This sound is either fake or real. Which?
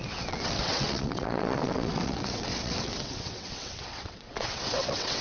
fake